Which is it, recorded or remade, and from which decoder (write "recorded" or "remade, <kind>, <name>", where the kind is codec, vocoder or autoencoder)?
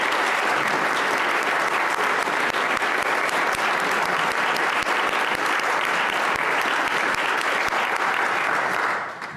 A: recorded